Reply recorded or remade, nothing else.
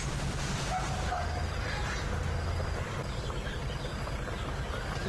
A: recorded